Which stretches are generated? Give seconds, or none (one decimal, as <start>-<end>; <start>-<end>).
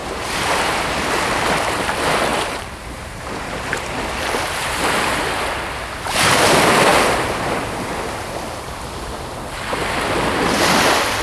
0.0-1.4; 2.3-3.9; 6.9-7.6